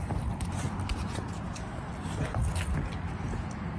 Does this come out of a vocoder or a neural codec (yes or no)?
no